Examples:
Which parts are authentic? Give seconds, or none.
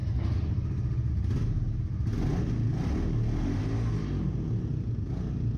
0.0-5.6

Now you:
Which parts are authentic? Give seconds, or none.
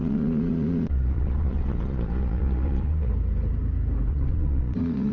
3.1-4.1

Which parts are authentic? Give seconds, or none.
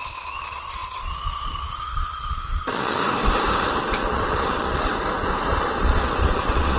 3.0-3.8; 4.9-5.5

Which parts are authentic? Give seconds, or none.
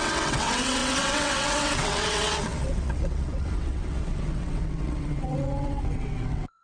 none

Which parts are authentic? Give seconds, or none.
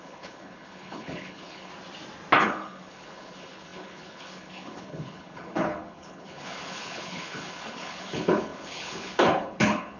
1.7-2.4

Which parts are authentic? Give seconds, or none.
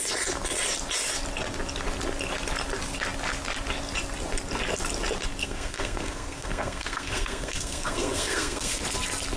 0.0-5.4; 8.8-9.4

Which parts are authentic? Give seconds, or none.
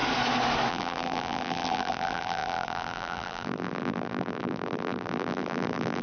0.0-0.7